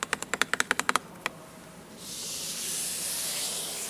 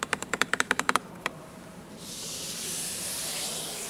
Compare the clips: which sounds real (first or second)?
first